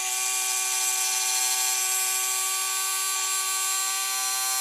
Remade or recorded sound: recorded